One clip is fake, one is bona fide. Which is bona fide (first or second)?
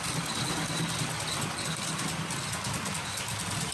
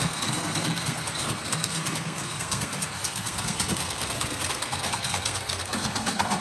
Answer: first